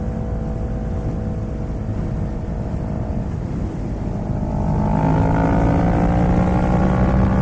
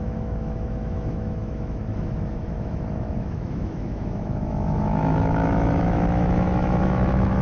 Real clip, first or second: first